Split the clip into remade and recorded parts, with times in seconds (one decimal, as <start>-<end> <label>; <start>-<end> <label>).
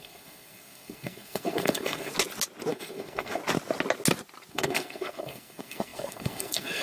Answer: 0.0-2.1 remade; 2.1-2.7 recorded; 2.7-3.4 remade; 3.4-4.5 recorded; 4.5-6.8 remade